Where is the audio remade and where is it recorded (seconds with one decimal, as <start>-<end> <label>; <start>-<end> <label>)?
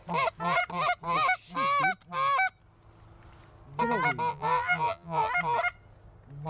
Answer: 0.0-4.3 recorded; 4.3-5.3 remade; 5.3-6.5 recorded